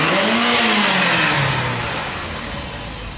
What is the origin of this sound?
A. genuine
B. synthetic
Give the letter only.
A